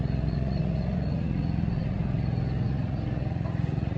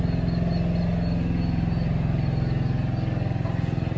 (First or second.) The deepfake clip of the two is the first